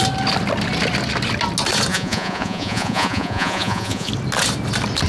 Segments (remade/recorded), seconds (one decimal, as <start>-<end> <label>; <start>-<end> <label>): 0.0-1.9 recorded; 1.9-4.1 remade; 4.1-5.1 recorded

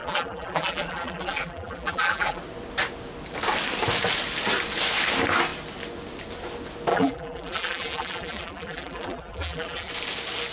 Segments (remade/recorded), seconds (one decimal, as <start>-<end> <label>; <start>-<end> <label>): 0.0-2.4 remade; 2.4-6.9 recorded; 6.9-9.9 remade; 9.9-10.5 recorded